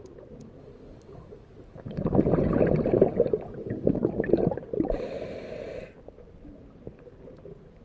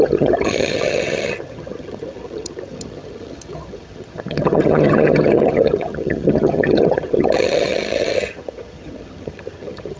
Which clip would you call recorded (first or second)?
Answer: first